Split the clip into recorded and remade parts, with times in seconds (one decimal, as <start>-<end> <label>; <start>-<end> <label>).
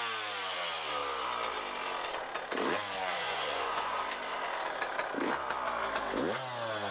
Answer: 0.0-3.0 recorded; 3.0-4.0 remade; 4.0-6.9 recorded